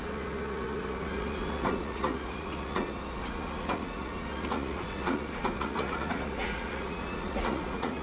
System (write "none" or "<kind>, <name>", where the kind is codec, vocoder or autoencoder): vocoder, Vocos